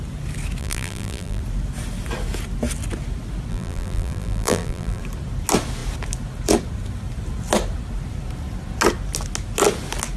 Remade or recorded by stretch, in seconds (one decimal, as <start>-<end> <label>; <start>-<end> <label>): 0.0-0.6 recorded; 0.6-1.4 remade; 1.4-3.5 recorded; 3.5-5.0 remade; 5.0-10.2 recorded

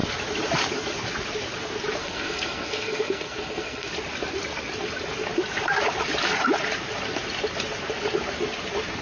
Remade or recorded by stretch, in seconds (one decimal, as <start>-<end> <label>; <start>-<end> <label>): 0.0-2.0 recorded; 2.0-3.9 remade; 3.9-9.0 recorded

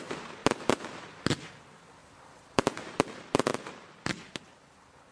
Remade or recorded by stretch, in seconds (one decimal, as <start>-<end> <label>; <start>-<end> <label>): 0.0-2.0 recorded; 2.0-3.1 remade; 3.1-3.5 recorded; 3.5-4.1 remade; 4.1-5.1 recorded

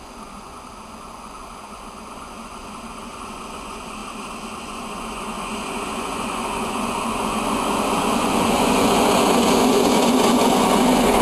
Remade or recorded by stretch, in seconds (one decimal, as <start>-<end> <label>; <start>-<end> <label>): 0.0-4.0 remade; 4.0-4.6 recorded; 4.6-11.2 remade

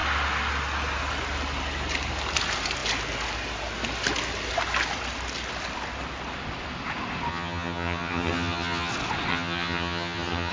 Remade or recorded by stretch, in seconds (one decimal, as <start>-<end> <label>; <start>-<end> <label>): 0.0-7.3 recorded; 7.3-8.9 remade; 8.9-9.3 recorded; 9.3-10.5 remade

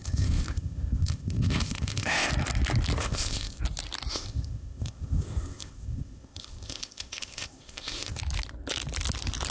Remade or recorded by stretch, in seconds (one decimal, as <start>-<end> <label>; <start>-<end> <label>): 0.0-2.3 remade; 2.3-3.0 recorded; 3.0-3.6 remade; 3.6-4.1 recorded; 4.1-8.2 remade; 8.2-9.5 recorded

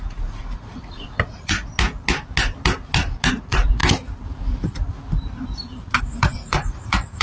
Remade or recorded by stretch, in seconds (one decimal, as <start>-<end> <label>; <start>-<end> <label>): 0.0-1.7 remade; 1.7-3.3 recorded; 3.3-3.8 remade; 3.8-6.0 recorded; 6.0-7.2 remade

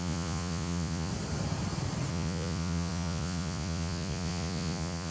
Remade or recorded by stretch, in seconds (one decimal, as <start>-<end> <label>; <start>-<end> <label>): 0.0-1.1 remade; 1.1-2.1 recorded; 2.1-5.1 remade